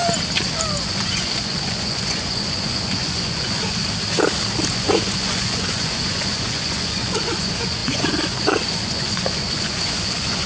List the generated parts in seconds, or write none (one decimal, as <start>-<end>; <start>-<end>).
0.8-3.8; 4.7-10.5